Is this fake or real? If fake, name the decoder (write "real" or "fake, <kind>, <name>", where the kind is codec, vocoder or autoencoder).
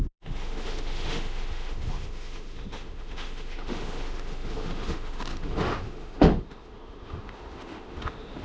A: fake, autoencoder, DAC-VAE